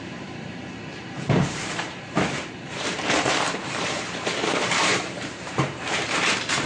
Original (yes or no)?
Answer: no